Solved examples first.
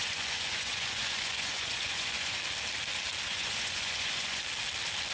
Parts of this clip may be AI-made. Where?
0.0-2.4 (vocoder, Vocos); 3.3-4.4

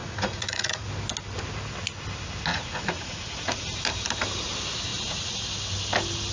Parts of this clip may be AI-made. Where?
0.0-0.9 (vocoder, Vocos); 2.5-3.6; 4.9-5.5

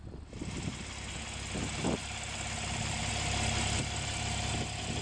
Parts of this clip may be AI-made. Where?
none

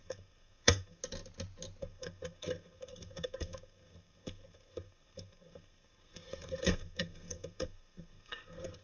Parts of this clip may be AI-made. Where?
0.0-1.0 (codec, SNAC); 1.8-8.8

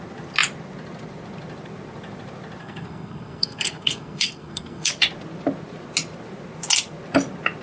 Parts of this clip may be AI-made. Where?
2.6-4.9 (codec, SNAC)

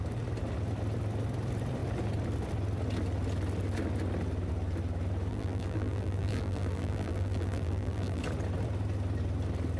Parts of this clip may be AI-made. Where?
5.3-8.2 (vocoder, BigVGAN v2)